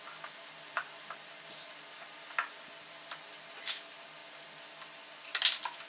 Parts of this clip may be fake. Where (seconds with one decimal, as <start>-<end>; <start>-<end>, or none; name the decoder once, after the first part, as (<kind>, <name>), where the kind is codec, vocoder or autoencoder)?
none